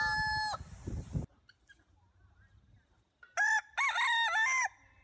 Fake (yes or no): no